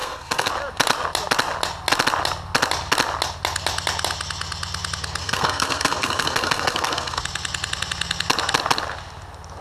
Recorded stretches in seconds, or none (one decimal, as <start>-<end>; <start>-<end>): 0.5-5.2; 7.2-9.6